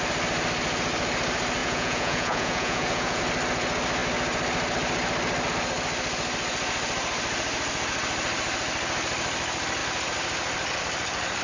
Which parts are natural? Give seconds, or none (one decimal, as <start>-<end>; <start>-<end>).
0.0-1.6; 3.2-11.4